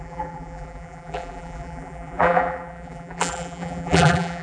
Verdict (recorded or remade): remade